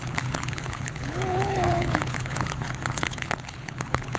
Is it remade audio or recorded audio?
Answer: remade